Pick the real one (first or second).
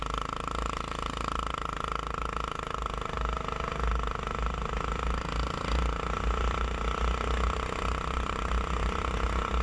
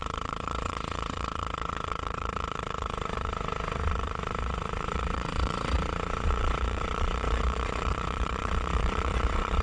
first